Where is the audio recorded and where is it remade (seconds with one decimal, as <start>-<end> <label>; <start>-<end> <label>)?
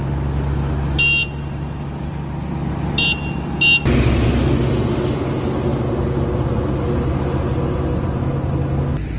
0.0-9.2 recorded